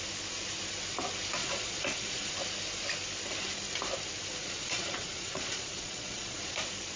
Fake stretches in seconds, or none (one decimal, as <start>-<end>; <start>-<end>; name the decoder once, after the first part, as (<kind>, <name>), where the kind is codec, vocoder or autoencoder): 1.4-2.3 (vocoder, Vocos); 4.4-6.6